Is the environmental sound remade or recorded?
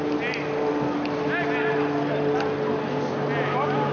recorded